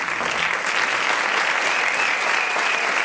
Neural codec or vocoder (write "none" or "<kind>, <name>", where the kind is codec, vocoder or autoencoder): none